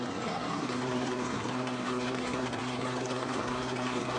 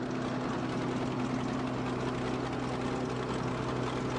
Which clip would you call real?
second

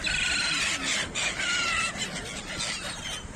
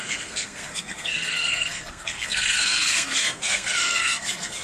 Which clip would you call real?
first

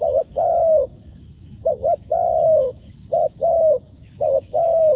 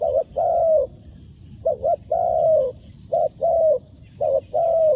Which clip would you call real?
second